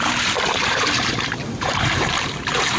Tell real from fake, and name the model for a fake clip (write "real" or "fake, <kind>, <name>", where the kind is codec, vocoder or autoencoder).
fake, vocoder, BigVGAN v2